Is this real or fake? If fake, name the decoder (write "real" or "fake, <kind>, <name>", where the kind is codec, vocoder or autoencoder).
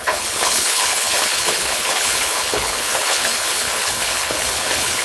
fake, codec, HILCodec